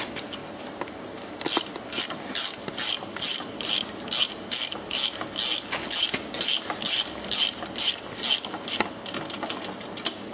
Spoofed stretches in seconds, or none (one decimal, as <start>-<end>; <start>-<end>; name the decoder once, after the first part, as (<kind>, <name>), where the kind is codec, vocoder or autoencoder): none